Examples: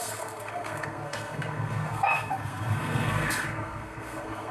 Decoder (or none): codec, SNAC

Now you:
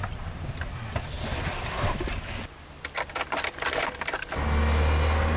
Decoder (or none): none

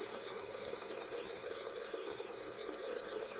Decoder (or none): codec, SNAC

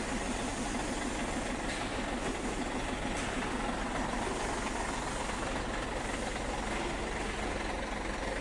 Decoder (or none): none